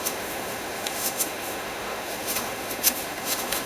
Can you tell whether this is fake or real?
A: fake